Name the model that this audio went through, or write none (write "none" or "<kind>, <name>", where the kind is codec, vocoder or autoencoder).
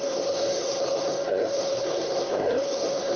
codec, SNAC